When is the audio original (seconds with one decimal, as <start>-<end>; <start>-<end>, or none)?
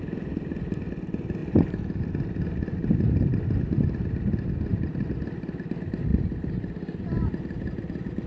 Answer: 0.0-1.4; 2.0-4.7; 5.2-6.1; 6.6-8.3